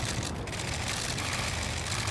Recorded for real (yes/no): yes